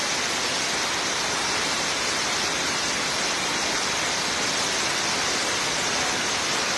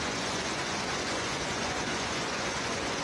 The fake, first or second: second